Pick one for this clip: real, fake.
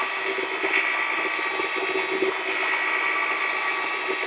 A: real